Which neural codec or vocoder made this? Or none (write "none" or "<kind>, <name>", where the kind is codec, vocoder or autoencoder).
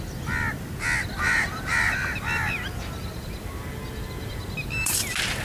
none